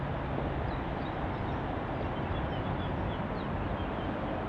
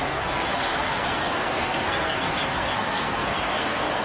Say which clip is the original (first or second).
first